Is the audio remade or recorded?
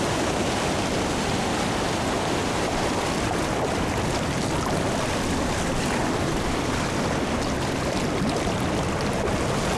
recorded